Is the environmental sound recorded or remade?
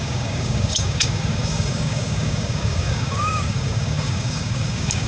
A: remade